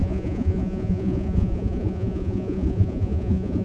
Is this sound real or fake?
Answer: fake